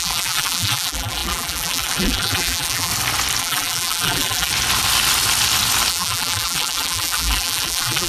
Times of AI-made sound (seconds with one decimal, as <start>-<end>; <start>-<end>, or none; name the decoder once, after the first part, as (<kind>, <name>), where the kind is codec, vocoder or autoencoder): 0.0-2.9 (vocoder, BigVGAN v2); 3.4-4.5; 5.9-8.1